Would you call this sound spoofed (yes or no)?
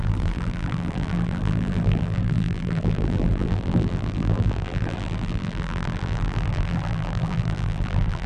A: yes